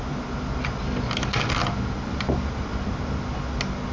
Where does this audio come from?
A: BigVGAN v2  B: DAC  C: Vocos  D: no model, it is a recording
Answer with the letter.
D